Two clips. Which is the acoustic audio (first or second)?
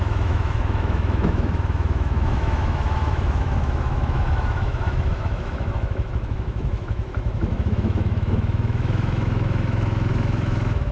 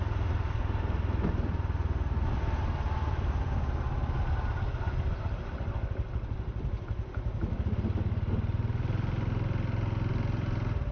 second